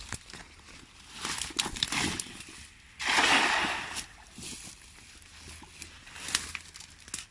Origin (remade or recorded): recorded